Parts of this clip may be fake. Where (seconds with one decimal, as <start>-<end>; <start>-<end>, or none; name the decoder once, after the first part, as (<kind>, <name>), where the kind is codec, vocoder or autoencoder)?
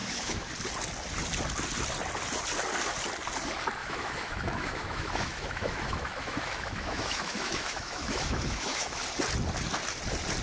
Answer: 0.0-0.5 (autoencoder, DAC-VAE); 3.8-9.0